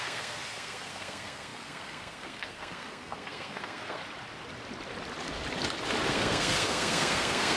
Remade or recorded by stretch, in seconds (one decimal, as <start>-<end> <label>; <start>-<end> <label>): 0.0-4.0 remade; 4.0-6.1 recorded; 6.1-7.6 remade